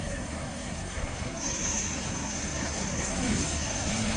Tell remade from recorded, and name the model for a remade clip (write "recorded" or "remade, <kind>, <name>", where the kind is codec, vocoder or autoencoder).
remade, codec, SNAC